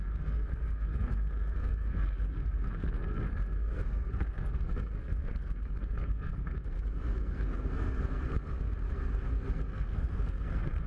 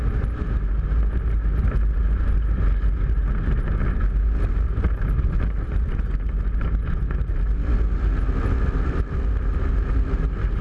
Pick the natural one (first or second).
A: second